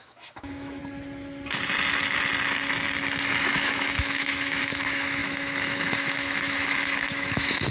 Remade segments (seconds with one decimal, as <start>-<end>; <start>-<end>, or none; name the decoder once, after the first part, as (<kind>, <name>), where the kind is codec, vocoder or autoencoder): 0.0-0.8 (autoencoder, DAC-VAE); 3.4-7.7